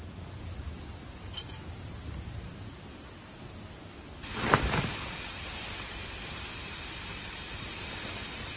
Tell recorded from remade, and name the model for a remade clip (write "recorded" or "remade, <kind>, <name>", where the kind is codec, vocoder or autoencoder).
recorded